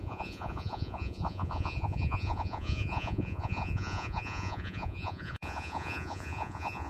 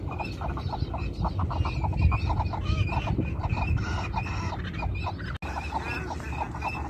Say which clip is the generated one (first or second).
first